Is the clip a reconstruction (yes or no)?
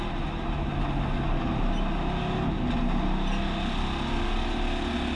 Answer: no